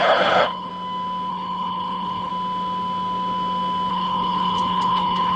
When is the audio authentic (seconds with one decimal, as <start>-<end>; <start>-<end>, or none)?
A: 0.7-1.3; 2.3-3.9